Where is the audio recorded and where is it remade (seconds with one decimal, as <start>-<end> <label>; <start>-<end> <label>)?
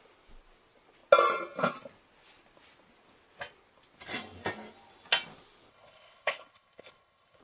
0.0-5.7 recorded; 5.7-7.4 remade